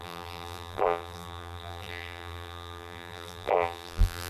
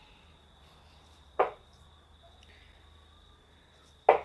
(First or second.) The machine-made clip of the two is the first